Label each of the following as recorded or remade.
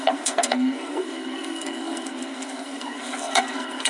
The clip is remade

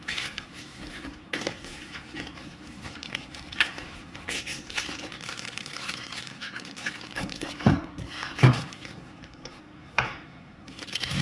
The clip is remade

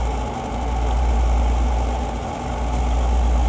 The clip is recorded